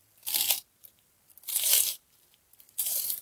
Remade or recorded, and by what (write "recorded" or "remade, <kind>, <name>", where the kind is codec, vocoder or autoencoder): remade, vocoder, BigVGAN v2